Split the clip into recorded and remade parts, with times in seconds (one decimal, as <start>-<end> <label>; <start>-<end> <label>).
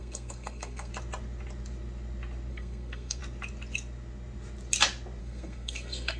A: 0.0-0.9 remade; 0.9-2.5 recorded; 2.5-3.2 remade; 3.2-5.2 recorded; 5.2-6.2 remade